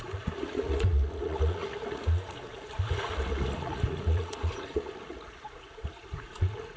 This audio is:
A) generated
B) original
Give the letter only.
A